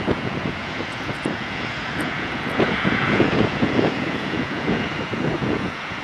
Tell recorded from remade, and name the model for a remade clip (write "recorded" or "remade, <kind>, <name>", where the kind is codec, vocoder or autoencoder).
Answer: remade, vocoder, Vocos